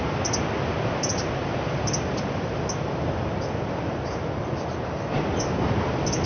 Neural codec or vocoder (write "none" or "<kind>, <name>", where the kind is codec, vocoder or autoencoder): none